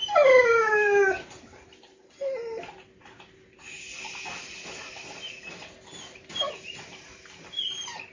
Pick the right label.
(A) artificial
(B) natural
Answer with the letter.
B